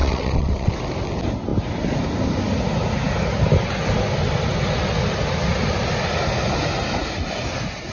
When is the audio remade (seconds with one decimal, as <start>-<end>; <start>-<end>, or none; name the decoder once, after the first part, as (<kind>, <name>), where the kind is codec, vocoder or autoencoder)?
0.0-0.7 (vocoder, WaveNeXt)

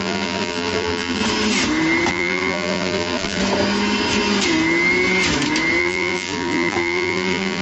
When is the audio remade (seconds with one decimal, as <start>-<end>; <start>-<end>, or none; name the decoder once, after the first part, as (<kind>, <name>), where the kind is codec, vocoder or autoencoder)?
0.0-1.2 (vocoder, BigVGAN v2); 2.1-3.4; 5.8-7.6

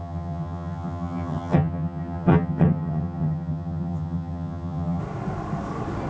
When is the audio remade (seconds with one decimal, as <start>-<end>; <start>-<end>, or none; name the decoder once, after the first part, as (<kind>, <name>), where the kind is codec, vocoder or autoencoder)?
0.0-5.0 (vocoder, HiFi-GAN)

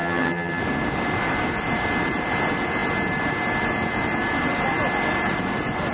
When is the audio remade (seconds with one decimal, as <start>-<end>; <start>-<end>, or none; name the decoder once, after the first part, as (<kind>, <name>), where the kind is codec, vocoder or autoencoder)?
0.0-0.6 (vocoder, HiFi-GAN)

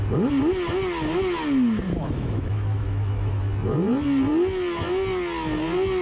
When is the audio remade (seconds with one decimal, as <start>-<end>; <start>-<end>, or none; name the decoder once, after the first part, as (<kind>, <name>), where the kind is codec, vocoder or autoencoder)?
1.9-3.4 (autoencoder, DAC-VAE)

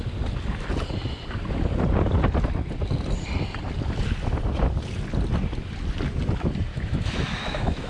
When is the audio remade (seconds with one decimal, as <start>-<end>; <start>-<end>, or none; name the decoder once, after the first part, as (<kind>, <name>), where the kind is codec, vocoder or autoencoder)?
6.7-7.9 (autoencoder, DAC-VAE)